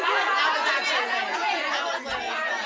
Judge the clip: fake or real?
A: fake